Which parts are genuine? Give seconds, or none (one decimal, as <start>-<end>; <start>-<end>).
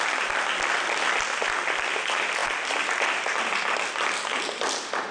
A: 0.0-5.1